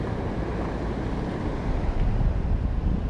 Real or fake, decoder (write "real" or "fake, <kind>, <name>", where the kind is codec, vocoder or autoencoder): real